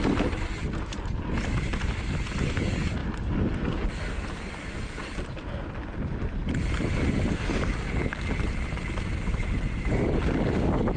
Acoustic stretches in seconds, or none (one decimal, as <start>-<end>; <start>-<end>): 0.0-11.0